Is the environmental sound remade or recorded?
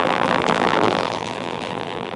remade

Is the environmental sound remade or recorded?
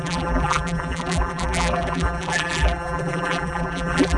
remade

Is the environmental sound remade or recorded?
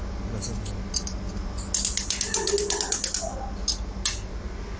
recorded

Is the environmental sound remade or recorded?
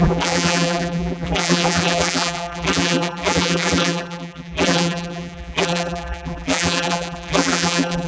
remade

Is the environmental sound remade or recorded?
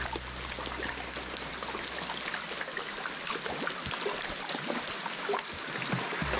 recorded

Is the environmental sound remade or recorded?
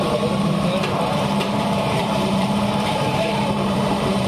remade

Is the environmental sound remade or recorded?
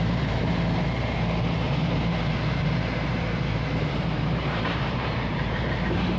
remade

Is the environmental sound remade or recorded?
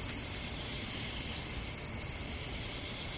recorded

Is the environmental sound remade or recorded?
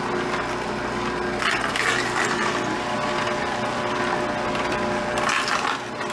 recorded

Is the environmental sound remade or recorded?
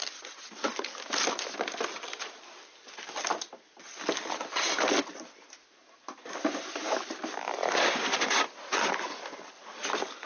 recorded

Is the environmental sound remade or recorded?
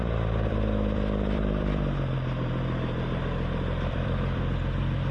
remade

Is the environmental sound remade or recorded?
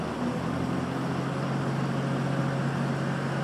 recorded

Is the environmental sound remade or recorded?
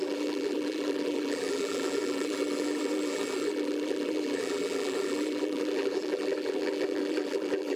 remade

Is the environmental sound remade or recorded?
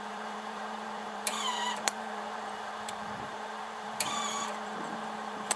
remade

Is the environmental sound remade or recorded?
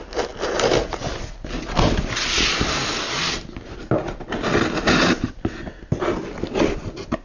recorded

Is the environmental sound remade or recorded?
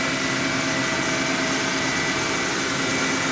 recorded